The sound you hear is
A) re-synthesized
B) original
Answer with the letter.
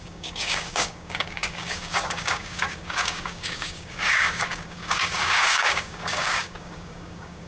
A